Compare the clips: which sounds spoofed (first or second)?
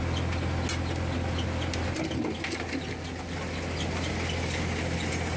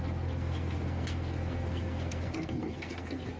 second